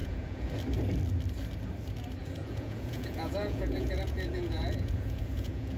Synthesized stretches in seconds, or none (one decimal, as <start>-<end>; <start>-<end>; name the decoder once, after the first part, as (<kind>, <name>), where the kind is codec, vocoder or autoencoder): 0.0-0.5 (vocoder, Vocos); 2.2-5.8